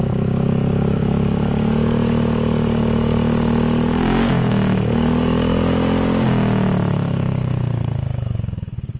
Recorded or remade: remade